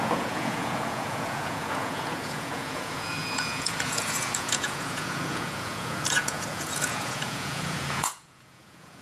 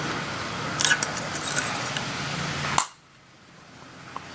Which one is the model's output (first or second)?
first